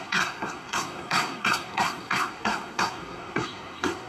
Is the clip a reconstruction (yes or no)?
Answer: yes